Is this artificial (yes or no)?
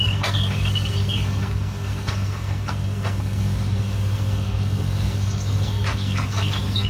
yes